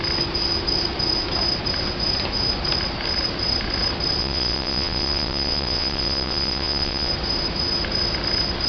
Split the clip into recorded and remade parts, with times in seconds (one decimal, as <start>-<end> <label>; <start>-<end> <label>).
0.0-4.2 recorded; 4.2-7.1 remade; 7.1-8.7 recorded